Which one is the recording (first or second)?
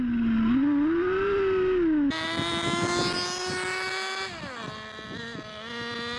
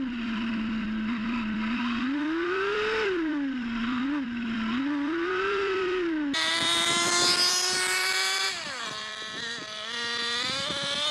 first